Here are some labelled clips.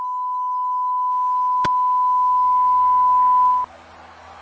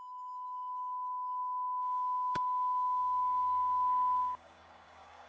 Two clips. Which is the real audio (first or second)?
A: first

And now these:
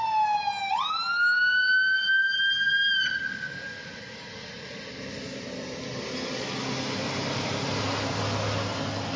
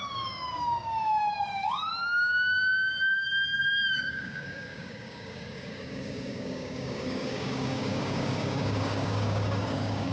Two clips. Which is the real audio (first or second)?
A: first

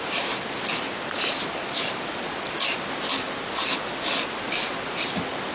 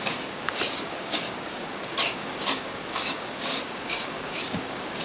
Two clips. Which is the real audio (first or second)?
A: first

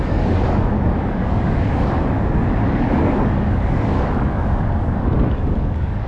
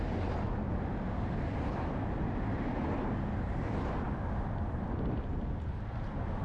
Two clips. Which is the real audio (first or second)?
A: second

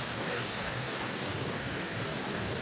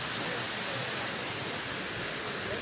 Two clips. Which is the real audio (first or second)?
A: second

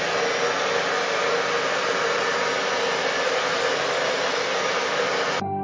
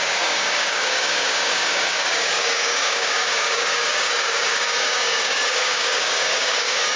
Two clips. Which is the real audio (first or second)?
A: first